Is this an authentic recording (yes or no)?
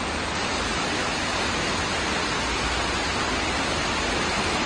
yes